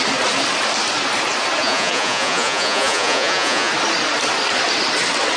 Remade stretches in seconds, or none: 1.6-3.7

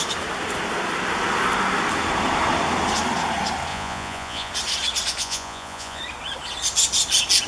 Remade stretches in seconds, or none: 3.7-4.5; 5.2-6.0

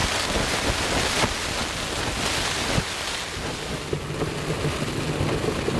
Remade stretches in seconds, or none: none

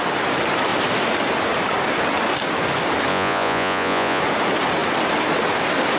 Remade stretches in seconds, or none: 3.1-4.2

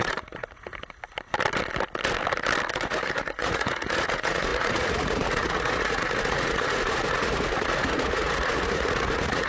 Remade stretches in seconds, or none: 0.0-0.7; 2.7-9.5